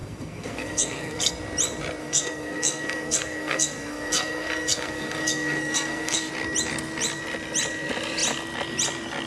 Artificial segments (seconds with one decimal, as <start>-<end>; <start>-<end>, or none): 0.0-1.3; 2.0-6.3